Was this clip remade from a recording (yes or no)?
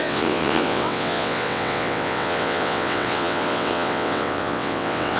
yes